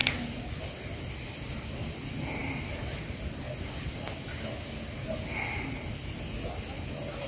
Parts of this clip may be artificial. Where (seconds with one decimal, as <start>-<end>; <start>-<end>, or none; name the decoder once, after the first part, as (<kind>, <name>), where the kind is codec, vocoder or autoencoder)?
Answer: none